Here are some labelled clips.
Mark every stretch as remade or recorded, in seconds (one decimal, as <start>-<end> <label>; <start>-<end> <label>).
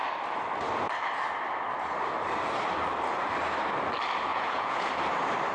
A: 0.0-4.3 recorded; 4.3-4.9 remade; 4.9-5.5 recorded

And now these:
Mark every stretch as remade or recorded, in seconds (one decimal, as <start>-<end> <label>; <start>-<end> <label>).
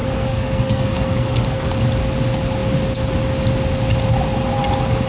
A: 0.0-1.7 remade; 1.7-5.1 recorded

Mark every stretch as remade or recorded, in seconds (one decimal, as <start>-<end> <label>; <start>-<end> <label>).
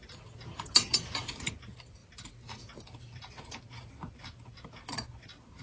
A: 0.0-5.6 recorded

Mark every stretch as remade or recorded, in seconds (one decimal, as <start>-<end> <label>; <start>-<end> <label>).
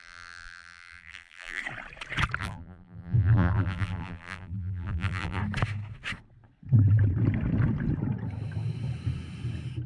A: 0.0-1.6 remade; 1.6-2.4 recorded; 2.4-5.4 remade; 5.4-9.9 recorded